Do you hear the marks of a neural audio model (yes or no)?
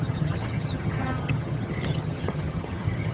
yes